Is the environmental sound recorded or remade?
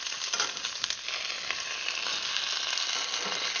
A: recorded